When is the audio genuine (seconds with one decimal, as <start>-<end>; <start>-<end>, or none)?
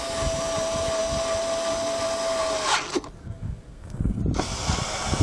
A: 0.0-3.2; 4.2-5.2